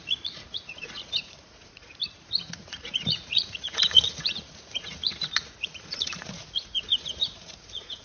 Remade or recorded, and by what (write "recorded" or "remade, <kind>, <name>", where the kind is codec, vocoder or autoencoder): remade, vocoder, Vocos